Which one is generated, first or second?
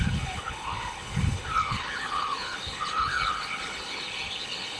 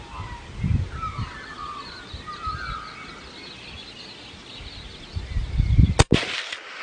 first